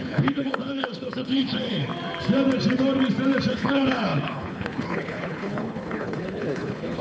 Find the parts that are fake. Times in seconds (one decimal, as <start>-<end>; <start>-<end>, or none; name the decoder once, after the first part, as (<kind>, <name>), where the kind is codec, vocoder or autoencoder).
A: 0.0-1.9 (codec, HILCodec); 3.5-7.0